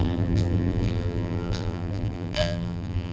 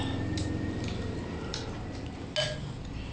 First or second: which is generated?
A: first